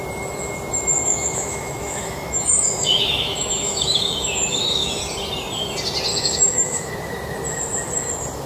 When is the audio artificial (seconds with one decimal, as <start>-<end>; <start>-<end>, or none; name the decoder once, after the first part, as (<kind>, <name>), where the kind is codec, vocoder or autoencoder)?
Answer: 1.0-5.0 (autoencoder, DAC-VAE); 6.1-6.9